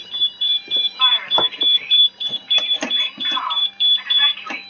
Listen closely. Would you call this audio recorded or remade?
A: remade